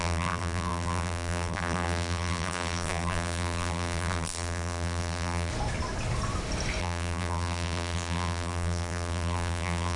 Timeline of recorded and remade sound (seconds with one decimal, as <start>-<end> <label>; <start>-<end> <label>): 0.0-5.5 remade; 5.5-6.8 recorded; 6.8-10.0 remade